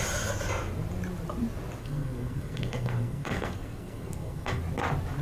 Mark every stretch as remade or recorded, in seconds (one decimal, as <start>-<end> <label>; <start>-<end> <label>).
0.0-1.8 recorded; 1.8-4.6 remade; 4.6-5.2 recorded